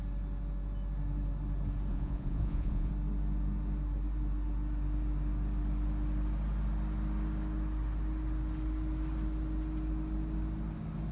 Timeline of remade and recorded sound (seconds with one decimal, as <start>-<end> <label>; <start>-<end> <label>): 0.0-1.9 recorded; 1.9-2.9 remade; 2.9-11.1 recorded